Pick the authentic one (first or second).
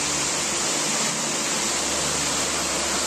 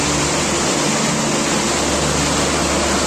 second